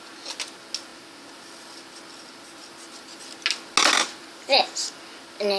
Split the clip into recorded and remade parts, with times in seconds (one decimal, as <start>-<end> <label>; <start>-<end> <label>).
0.0-5.6 recorded

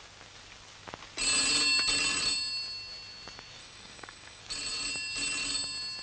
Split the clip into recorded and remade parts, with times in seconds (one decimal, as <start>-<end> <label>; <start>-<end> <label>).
0.0-3.6 recorded; 3.6-4.4 remade; 4.4-6.0 recorded

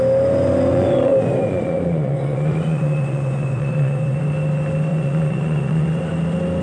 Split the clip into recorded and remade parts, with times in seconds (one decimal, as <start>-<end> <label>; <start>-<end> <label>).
0.0-0.7 recorded; 0.7-4.2 remade; 4.2-4.9 recorded; 4.9-6.1 remade; 6.1-6.6 recorded

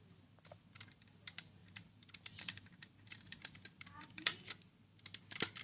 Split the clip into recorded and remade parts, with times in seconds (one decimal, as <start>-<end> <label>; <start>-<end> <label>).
0.0-1.6 recorded; 1.6-4.5 remade; 4.5-5.6 recorded

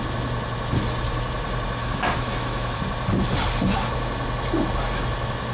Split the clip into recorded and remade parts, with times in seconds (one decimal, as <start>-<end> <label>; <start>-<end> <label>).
0.0-1.8 recorded; 1.8-2.8 remade; 2.8-5.5 recorded

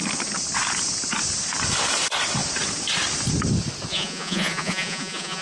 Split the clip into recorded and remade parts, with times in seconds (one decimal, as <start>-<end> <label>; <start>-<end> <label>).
0.0-3.9 recorded; 3.9-5.4 remade

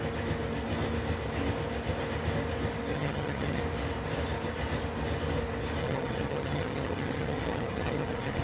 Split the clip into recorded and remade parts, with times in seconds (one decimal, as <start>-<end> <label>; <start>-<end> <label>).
0.0-2.9 recorded; 2.9-3.6 remade; 3.6-5.8 recorded; 5.8-8.4 remade

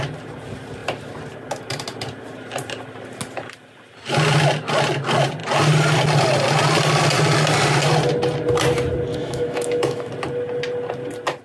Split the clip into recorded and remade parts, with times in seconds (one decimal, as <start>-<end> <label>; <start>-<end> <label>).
0.0-9.1 recorded; 9.1-10.1 remade; 10.1-11.4 recorded